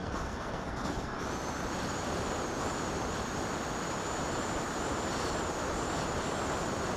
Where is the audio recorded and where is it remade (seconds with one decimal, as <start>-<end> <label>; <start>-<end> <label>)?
0.0-1.2 remade; 1.2-7.0 recorded